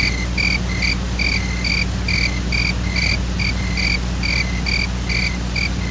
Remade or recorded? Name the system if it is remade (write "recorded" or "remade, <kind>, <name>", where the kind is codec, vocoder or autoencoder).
recorded